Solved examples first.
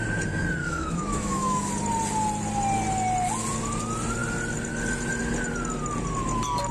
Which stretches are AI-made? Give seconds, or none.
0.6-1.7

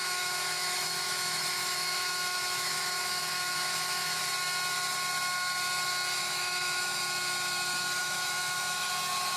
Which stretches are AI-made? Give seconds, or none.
0.0-4.2; 6.2-7.0; 8.0-8.9

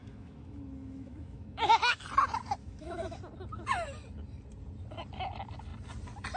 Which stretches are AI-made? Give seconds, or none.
0.0-2.0; 2.6-3.2

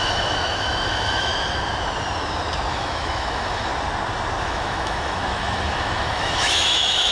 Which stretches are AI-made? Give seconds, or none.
0.0-1.3; 2.7-3.7; 4.4-7.1

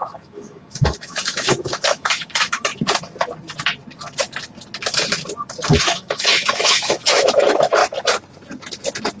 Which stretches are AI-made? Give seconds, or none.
0.0-2.7; 5.8-7.8

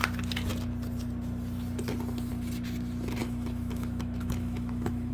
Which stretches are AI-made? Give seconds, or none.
3.2-5.1

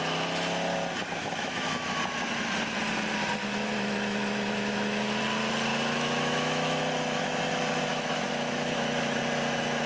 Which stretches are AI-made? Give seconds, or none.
1.2-2.0; 3.4-5.2; 5.7-6.8; 7.9-9.2

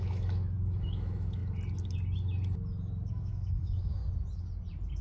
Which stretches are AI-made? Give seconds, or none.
0.0-1.4; 3.1-4.0